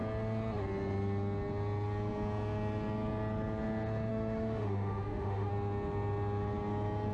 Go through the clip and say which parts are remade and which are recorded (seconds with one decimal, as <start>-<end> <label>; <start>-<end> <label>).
0.0-4.1 recorded; 4.1-5.5 remade; 5.5-7.1 recorded